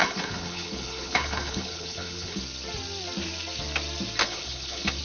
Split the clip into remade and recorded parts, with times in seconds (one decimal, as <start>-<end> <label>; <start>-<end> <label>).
0.0-2.4 remade; 2.4-4.2 recorded; 4.2-5.0 remade